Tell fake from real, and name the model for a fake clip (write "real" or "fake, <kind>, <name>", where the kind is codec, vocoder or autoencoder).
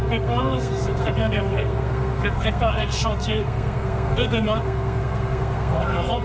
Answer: fake, codec, SNAC